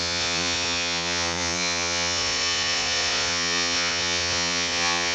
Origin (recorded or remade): remade